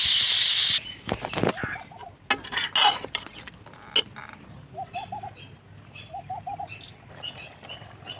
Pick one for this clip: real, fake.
real